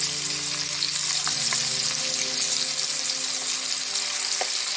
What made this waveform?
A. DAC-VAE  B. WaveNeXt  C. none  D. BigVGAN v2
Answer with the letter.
C